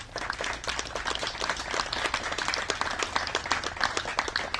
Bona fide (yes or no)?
yes